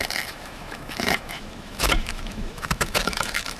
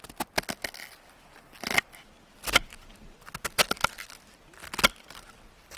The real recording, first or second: second